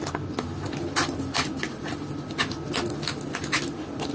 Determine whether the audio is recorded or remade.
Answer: recorded